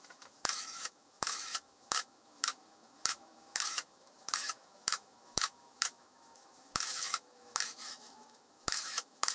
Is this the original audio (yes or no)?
no